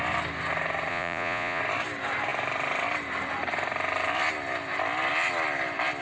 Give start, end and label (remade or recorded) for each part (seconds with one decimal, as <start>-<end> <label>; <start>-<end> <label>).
0.0-0.9 recorded; 0.9-1.6 remade; 1.6-6.0 recorded